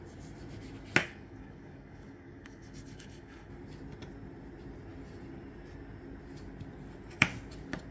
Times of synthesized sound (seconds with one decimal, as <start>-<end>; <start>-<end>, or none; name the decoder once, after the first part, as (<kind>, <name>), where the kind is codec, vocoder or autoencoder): 1.0-3.5 (codec, DAC)